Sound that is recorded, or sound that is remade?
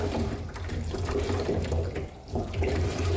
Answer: remade